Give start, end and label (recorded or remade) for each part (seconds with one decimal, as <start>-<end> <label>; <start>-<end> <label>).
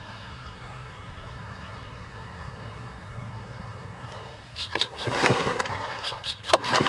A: 0.0-6.9 remade